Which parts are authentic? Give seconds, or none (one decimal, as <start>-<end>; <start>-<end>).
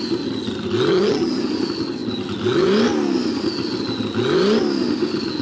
0.0-0.9; 1.4-5.4